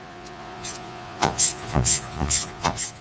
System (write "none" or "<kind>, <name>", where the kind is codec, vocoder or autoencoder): vocoder, Vocos